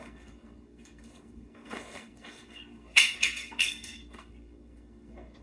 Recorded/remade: remade